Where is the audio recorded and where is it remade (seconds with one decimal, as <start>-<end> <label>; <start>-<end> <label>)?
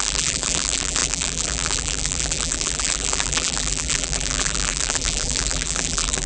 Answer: 0.0-6.3 remade